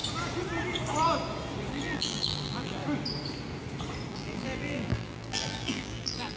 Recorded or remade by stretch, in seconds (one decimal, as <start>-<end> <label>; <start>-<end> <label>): 0.0-1.7 recorded; 1.7-2.8 remade; 2.8-4.1 recorded; 4.1-6.4 remade